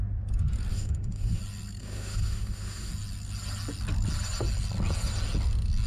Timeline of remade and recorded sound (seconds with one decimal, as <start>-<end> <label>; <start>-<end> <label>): 0.0-0.7 recorded; 0.7-1.4 remade; 1.4-1.8 recorded; 1.8-2.9 remade; 2.9-5.9 recorded